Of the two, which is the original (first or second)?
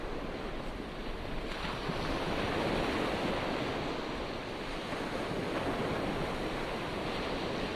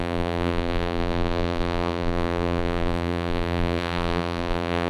first